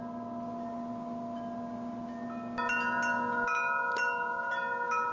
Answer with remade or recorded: recorded